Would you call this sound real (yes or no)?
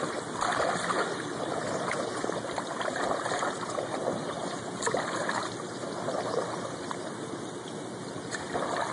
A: yes